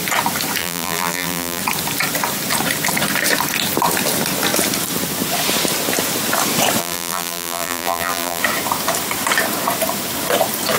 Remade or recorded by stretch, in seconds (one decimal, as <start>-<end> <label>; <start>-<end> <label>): 0.0-0.6 recorded; 0.6-1.6 remade; 1.6-6.8 recorded; 6.8-8.4 remade; 8.4-10.8 recorded